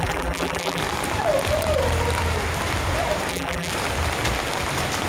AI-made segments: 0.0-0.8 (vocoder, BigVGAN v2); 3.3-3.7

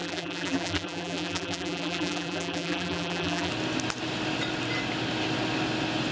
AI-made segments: 0.0-3.5 (vocoder, BigVGAN v2)

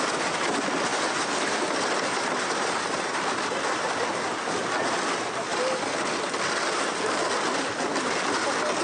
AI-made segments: none

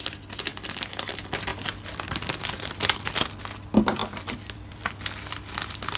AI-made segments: 1.5-2.3 (vocoder, BigVGAN v2); 4.0-4.9

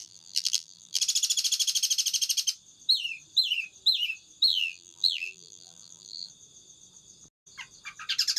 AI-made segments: 0.0-1.0 (vocoder, BigVGAN v2); 4.5-6.3